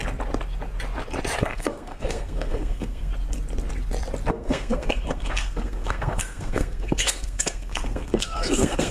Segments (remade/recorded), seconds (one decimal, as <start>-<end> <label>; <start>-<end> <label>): 0.0-1.4 recorded; 1.4-3.1 remade; 3.1-4.3 recorded; 4.3-8.9 remade